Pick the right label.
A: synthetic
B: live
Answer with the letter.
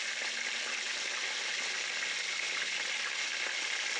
B